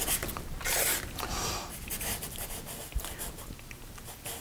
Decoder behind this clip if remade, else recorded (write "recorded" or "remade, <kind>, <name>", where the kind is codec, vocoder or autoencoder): recorded